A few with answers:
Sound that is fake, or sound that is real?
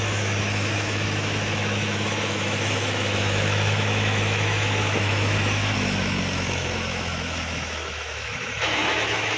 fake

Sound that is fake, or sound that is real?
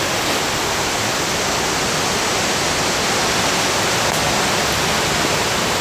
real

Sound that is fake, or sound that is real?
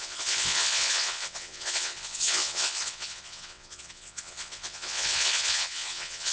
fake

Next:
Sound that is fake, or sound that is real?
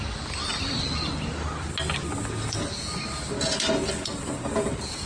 real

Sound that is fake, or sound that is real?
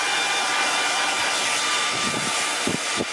real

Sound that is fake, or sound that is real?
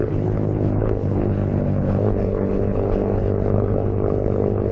fake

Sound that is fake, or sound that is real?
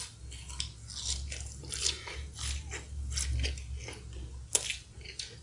real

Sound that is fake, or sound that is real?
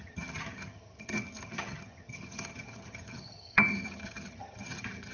fake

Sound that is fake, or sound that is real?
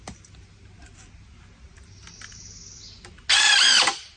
real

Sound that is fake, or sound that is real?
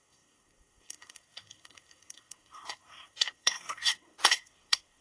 fake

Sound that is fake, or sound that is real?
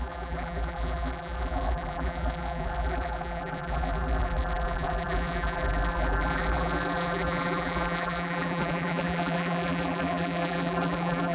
fake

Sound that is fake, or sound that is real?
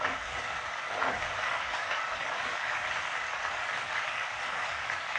fake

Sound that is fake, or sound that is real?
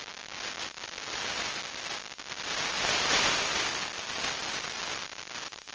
real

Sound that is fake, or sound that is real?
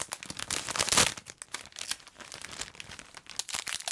real